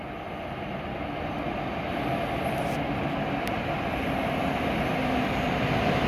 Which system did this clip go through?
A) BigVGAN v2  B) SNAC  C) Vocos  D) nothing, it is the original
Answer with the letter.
D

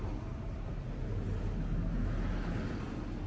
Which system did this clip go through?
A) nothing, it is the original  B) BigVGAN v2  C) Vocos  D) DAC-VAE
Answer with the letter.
A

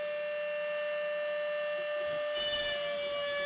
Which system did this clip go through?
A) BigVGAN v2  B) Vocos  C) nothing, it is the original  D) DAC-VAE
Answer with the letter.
C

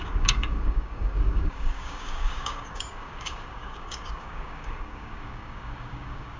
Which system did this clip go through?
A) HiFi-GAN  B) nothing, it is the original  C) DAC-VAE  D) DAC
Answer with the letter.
D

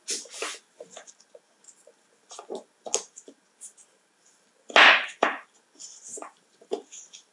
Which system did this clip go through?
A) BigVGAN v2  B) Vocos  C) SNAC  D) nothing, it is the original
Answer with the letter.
D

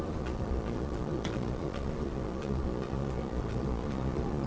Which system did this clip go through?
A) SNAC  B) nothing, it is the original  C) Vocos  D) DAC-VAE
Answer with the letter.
C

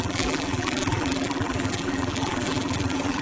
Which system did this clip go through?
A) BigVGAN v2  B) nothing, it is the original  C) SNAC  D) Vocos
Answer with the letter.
A